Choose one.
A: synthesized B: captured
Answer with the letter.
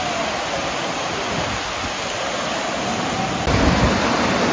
B